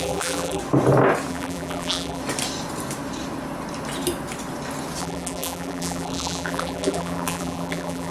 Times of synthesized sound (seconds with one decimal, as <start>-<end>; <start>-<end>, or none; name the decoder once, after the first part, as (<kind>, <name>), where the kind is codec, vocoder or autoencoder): 0.0-0.6 (vocoder, BigVGAN v2); 1.3-2.2; 5.0-8.1